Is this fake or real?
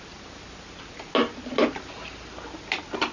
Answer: real